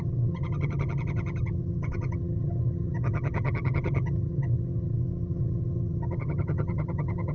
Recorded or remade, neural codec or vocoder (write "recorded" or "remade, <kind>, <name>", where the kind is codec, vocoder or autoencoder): remade, vocoder, HiFi-GAN